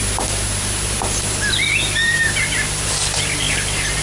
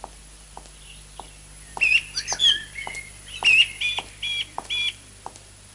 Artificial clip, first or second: second